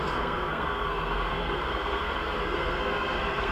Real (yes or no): no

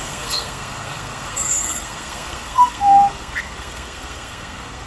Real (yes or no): no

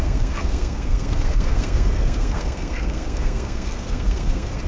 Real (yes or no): no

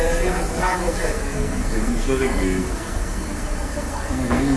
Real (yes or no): no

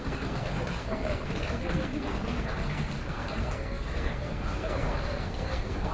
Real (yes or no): no